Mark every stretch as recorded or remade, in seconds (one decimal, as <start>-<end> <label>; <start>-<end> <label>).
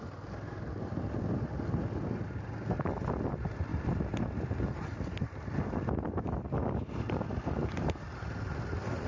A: 0.0-9.1 recorded